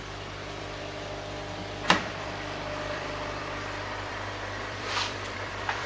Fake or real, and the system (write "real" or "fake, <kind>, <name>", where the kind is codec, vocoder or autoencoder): fake, vocoder, BigVGAN v2